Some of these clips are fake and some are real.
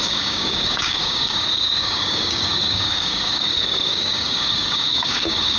fake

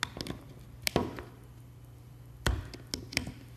real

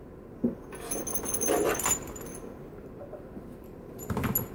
real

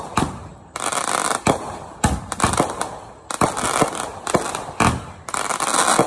real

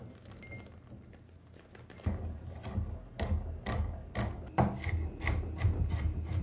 real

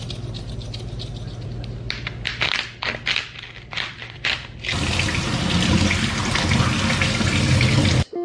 real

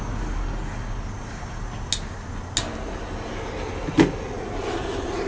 real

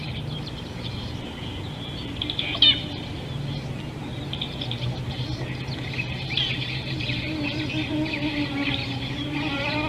fake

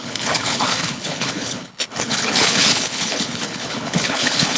fake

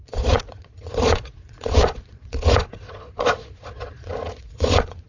fake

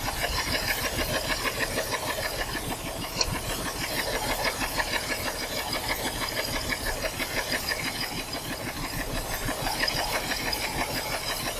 real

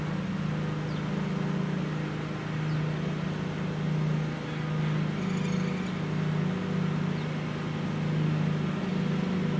real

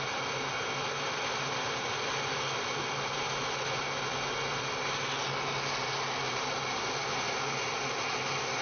real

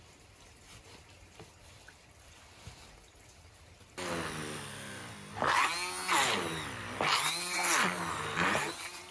real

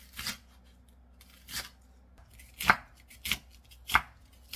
real